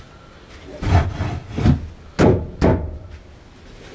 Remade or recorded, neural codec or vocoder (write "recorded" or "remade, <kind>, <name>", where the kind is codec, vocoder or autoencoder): recorded